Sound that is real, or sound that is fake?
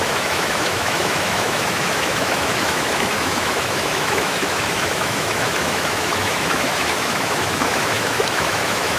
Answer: fake